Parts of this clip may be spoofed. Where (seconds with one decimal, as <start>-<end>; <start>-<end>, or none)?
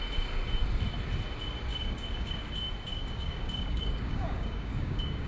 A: 1.7-2.5; 2.9-5.3